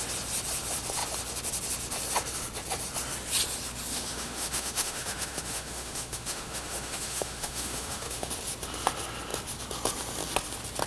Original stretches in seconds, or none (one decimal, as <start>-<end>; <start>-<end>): 0.0-3.9; 8.3-10.9